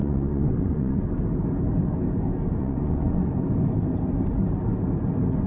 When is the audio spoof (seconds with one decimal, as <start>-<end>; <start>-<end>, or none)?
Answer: 0.0-1.0; 2.6-3.3